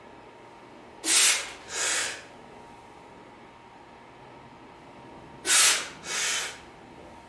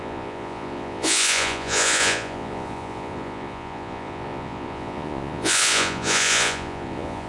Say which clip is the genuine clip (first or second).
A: first